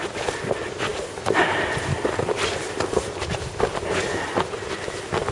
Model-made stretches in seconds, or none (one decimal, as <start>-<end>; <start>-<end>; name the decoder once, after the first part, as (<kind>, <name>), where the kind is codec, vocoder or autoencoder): none